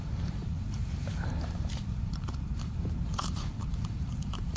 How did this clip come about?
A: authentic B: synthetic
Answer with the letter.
B